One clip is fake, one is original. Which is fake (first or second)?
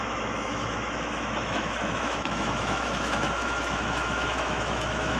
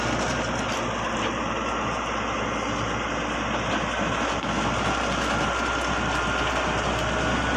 first